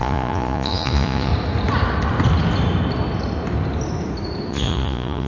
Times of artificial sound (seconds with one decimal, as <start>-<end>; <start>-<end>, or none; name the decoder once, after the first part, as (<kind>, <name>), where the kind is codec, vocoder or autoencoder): 0.0-1.3 (vocoder, Vocos); 4.5-5.3

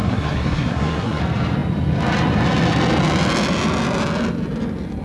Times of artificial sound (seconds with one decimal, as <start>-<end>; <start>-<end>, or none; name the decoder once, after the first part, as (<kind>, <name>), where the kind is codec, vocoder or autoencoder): 0.0-1.2 (codec, SNAC)

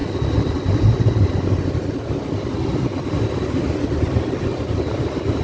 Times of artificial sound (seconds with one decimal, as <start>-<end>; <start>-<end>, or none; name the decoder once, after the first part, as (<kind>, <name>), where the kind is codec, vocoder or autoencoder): none

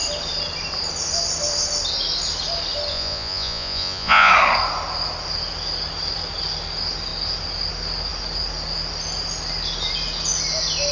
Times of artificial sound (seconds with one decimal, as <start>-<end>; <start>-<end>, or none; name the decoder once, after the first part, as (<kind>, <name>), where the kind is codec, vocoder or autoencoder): 2.9-4.3 (vocoder, Vocos)

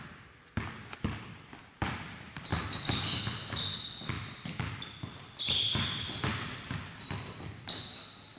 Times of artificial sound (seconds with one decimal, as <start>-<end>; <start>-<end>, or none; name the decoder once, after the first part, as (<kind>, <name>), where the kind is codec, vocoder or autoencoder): none